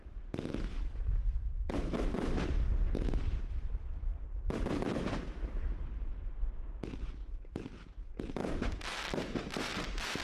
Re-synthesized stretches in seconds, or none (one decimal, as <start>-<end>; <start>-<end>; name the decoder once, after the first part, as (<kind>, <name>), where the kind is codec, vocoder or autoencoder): 0.0-8.4 (vocoder, BigVGAN v2); 9.5-10.2